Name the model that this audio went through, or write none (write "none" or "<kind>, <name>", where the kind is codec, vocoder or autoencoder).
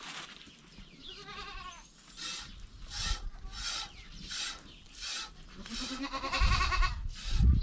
none